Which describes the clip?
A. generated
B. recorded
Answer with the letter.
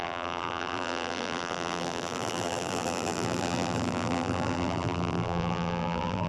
A